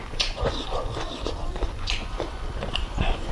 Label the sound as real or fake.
fake